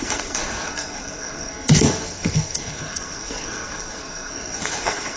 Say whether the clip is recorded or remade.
remade